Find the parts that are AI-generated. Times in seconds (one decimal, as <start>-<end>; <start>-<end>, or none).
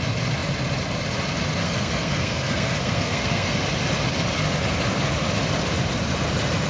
1.6-3.6